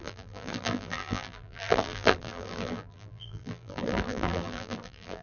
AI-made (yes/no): yes